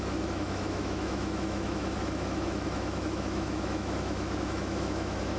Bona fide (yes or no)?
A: no